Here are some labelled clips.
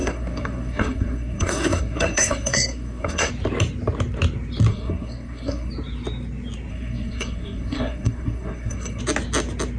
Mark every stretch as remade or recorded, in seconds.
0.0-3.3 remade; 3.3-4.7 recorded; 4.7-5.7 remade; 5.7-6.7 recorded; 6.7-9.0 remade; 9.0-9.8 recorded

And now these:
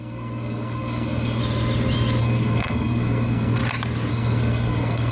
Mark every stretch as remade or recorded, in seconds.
0.0-1.4 remade; 1.4-2.2 recorded; 2.2-3.6 remade; 3.6-4.1 recorded; 4.1-5.1 remade